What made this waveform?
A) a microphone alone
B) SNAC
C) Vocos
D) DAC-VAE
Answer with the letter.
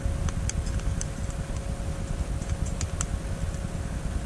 A